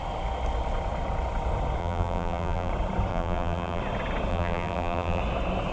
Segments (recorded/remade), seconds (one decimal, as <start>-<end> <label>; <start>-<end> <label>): 0.0-1.8 recorded; 1.8-2.7 remade; 2.7-3.1 recorded; 3.1-3.8 remade; 3.8-4.3 recorded; 4.3-5.2 remade; 5.2-5.7 recorded